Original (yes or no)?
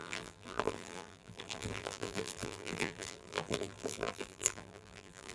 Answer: no